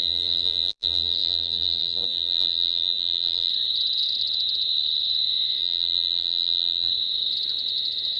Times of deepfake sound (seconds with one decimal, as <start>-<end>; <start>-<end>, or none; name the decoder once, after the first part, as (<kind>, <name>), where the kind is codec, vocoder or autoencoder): 0.0-3.5 (vocoder, BigVGAN v2); 5.6-6.9

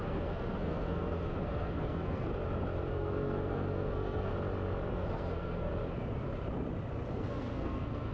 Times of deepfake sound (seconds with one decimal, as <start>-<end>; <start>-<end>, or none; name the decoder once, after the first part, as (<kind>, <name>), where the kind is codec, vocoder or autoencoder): 0.0-2.3 (codec, SNAC); 2.9-4.3; 4.9-5.7; 7.1-8.1

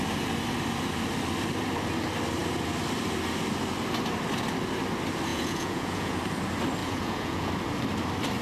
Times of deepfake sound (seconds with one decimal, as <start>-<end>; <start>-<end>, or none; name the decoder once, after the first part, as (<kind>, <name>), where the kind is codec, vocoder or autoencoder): 5.3-6.2 (vocoder, Vocos); 6.8-7.5

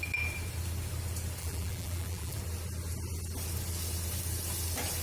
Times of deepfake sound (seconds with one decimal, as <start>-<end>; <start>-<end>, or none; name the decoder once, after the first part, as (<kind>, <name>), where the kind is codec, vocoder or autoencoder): 1.4-2.4 (vocoder, BigVGAN v2)

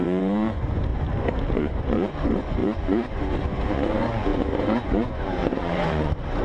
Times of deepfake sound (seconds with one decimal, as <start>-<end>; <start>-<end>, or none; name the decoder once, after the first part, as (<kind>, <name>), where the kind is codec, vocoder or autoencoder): 0.0-0.9 (vocoder, Vocos); 1.5-6.4

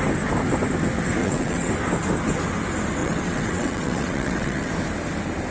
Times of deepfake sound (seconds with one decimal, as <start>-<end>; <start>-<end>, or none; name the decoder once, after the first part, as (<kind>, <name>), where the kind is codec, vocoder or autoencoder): 1.2-1.7 (vocoder, WaveNeXt); 3.0-4.7